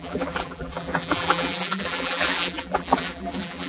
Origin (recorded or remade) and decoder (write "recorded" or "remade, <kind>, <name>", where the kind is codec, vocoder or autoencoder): remade, vocoder, BigVGAN v2